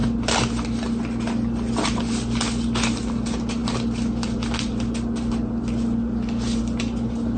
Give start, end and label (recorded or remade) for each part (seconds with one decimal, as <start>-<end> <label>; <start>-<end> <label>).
0.0-7.4 recorded